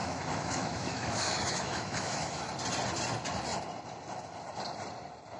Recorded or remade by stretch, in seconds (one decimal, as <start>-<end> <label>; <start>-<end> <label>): 0.0-2.5 remade; 2.5-5.4 recorded